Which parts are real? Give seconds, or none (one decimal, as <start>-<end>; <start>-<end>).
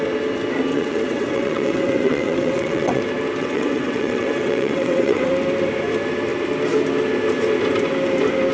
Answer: 0.0-0.7; 3.0-3.4; 5.3-8.5